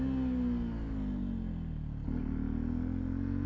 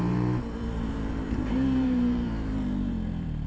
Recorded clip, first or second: first